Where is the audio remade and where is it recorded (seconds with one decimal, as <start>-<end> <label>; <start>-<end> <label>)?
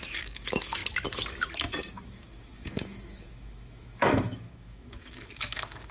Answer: 0.0-0.8 remade; 0.8-1.9 recorded; 1.9-5.9 remade